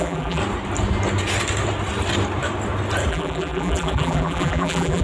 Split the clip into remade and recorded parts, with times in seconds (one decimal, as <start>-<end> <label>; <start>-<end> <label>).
0.0-0.4 remade; 0.4-3.1 recorded; 3.1-5.0 remade